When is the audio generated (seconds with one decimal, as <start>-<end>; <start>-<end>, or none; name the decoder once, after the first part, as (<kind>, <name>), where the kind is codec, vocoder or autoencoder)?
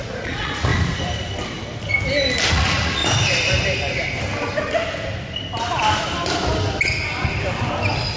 0.0-0.7 (vocoder, Vocos); 2.5-3.0